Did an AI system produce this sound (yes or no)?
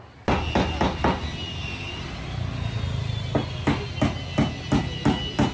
no